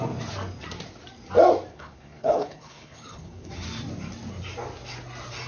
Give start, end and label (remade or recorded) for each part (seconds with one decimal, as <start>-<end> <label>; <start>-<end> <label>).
0.0-1.7 recorded; 1.7-3.5 remade; 3.5-5.5 recorded